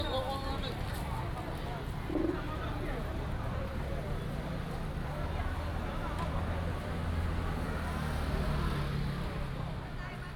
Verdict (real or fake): real